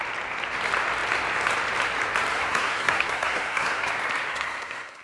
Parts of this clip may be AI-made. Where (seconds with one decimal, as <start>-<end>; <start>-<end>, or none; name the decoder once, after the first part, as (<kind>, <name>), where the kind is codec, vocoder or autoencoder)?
2.3-3.9 (codec, SNAC); 4.3-5.0